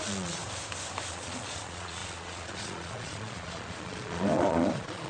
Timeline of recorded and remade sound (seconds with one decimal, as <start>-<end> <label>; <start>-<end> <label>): 0.0-0.4 remade; 0.4-1.1 recorded; 1.1-5.1 remade